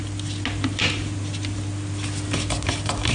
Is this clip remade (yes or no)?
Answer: no